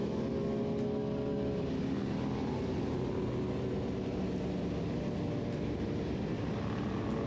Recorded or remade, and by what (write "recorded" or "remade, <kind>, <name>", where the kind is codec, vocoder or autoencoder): recorded